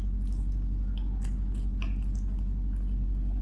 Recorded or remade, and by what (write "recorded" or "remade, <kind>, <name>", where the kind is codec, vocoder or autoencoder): recorded